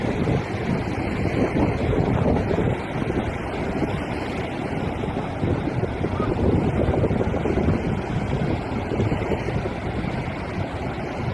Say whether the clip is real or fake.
real